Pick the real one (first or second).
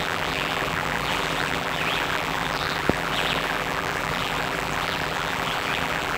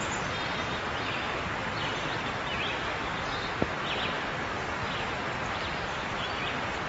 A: second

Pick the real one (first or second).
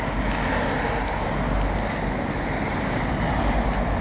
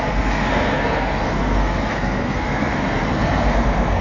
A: first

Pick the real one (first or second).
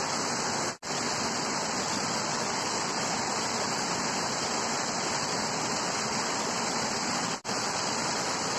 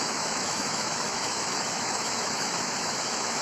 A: first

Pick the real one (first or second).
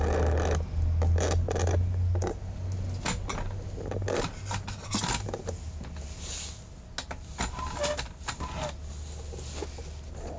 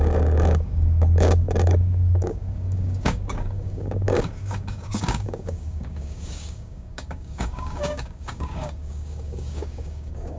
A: first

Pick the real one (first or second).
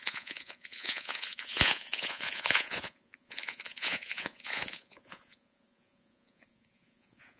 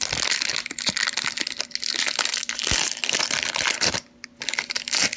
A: second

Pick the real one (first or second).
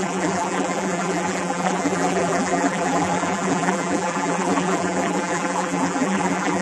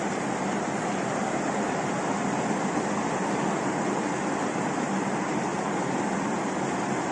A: second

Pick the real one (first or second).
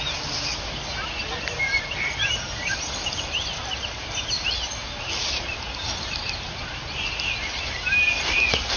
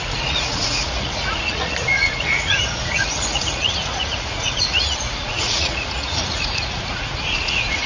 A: first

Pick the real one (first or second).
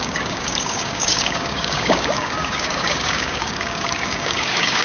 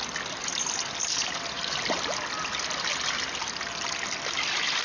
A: second